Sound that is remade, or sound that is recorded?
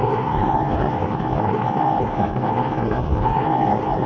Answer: remade